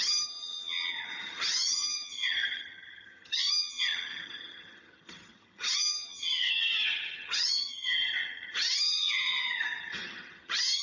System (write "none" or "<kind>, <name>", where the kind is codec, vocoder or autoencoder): vocoder, HiFi-GAN